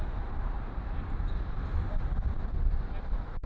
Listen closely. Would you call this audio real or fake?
real